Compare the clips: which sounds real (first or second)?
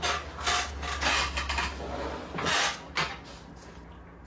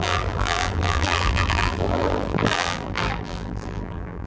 first